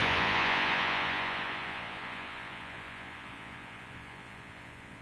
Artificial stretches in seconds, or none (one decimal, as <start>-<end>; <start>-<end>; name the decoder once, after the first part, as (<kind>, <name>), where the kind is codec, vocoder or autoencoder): 0.0-5.0 (vocoder, Vocos)